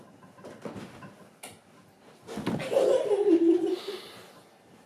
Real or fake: real